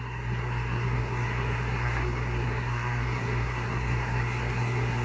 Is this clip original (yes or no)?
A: no